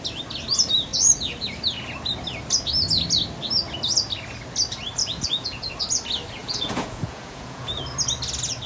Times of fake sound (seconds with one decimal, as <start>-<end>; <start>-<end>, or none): 5.0-5.7; 6.4-7.8